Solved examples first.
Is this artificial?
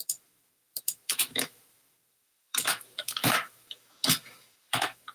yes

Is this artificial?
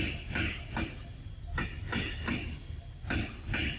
no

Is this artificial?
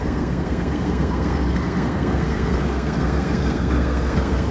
yes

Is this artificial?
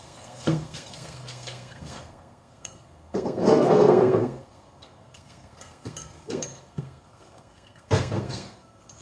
yes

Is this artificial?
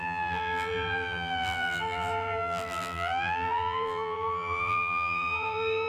yes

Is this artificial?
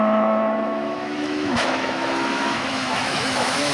yes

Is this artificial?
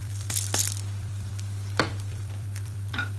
yes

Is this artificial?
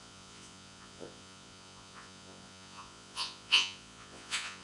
yes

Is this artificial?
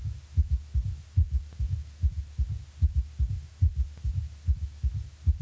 yes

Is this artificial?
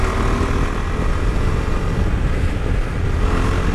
no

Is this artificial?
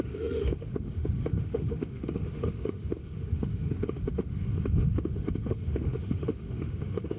yes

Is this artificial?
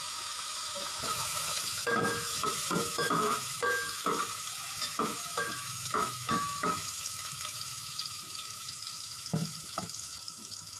yes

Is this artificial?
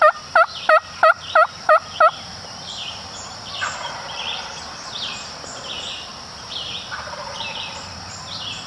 yes